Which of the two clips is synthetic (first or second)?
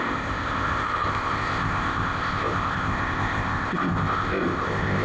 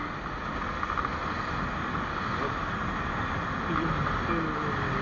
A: first